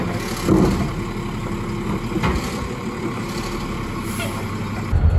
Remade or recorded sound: recorded